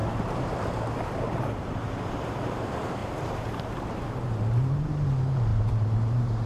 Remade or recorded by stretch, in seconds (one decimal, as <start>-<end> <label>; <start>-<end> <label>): 0.0-1.4 recorded; 1.4-6.5 remade